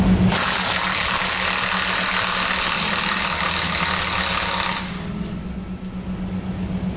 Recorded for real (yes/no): yes